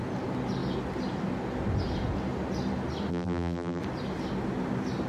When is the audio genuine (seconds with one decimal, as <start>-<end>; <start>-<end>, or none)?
0.0-3.1; 3.8-5.1